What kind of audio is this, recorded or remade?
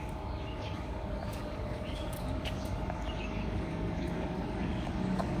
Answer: remade